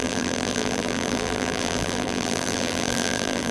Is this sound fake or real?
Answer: fake